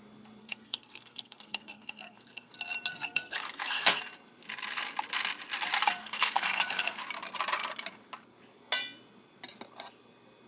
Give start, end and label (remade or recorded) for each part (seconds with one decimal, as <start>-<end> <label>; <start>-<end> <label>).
0.0-0.4 recorded; 0.4-2.5 remade; 2.5-2.9 recorded; 2.9-4.0 remade; 4.0-6.0 recorded; 6.0-7.0 remade; 7.0-10.5 recorded